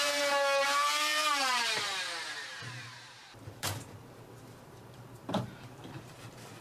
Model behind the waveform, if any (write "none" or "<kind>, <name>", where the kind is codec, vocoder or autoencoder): vocoder, BigVGAN v2